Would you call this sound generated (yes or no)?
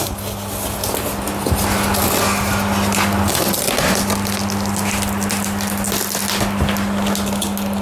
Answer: no